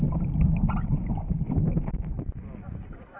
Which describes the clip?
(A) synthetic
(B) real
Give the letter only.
B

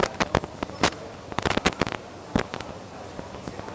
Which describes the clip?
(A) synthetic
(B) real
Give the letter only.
A